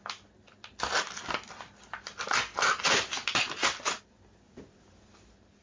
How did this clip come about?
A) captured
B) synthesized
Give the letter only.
A